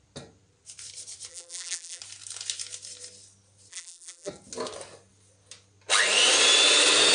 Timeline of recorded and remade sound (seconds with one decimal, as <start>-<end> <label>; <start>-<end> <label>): 0.0-1.3 recorded; 1.3-2.0 remade; 2.0-3.7 recorded; 3.7-4.3 remade; 4.3-7.1 recorded